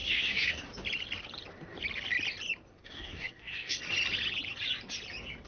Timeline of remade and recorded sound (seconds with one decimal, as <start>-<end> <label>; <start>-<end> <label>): 0.0-0.7 remade; 0.7-2.7 recorded; 2.7-3.8 remade; 3.8-5.5 recorded